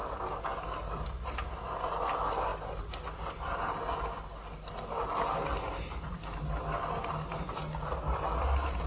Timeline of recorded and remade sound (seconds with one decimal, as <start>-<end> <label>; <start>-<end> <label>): 0.0-8.9 recorded